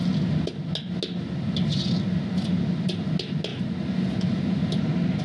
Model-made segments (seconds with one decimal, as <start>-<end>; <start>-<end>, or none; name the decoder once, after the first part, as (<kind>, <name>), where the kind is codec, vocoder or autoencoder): none

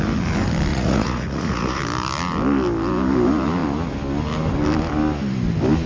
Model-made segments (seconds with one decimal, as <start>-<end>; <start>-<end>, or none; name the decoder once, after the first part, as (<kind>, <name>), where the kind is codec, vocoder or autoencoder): 0.7-1.8 (vocoder, Vocos)

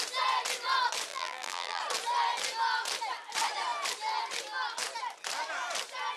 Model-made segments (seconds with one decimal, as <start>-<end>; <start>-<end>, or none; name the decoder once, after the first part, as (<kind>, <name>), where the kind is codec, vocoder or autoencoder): 1.1-1.8 (vocoder, BigVGAN v2)